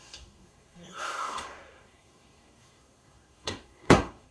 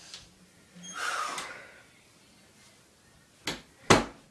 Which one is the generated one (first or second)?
first